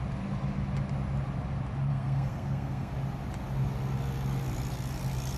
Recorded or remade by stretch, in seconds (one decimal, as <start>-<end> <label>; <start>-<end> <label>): 0.0-1.9 recorded; 1.9-2.9 remade; 2.9-5.4 recorded